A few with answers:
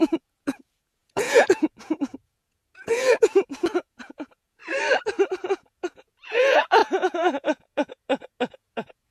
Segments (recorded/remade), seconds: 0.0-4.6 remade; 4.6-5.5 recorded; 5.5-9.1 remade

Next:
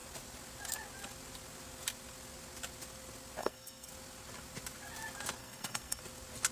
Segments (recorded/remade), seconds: 0.0-3.4 recorded; 3.4-3.9 remade; 3.9-5.4 recorded; 5.4-6.0 remade; 6.0-6.5 recorded

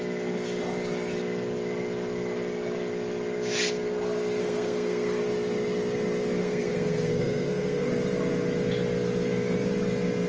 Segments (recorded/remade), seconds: 0.0-4.4 recorded; 4.4-5.2 remade; 5.2-6.4 recorded; 6.4-7.9 remade; 7.9-10.3 recorded

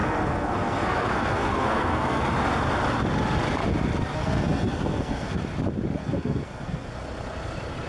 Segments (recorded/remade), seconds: 0.0-2.2 remade; 2.2-4.1 recorded; 4.1-5.4 remade; 5.4-6.0 recorded; 6.0-6.9 remade; 6.9-7.9 recorded

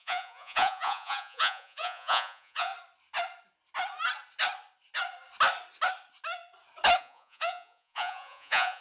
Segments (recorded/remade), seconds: 0.0-2.7 remade; 2.7-7.0 recorded; 7.0-8.8 remade

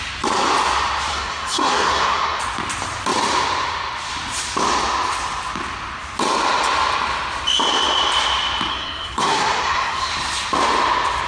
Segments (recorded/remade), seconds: 0.0-1.1 recorded; 1.1-2.4 remade; 2.4-8.7 recorded; 8.7-10.1 remade; 10.1-11.3 recorded

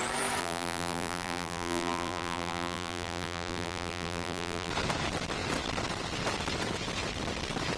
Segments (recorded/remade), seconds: 0.0-0.4 recorded; 0.4-4.7 remade; 4.7-7.8 recorded

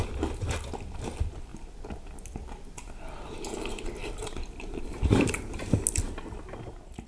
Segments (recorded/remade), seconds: 0.0-4.0 recorded; 4.0-5.7 remade; 5.7-7.1 recorded